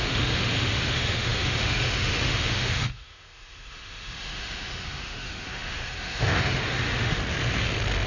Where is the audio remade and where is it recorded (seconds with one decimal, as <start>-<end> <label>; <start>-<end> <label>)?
0.0-7.2 remade; 7.2-8.1 recorded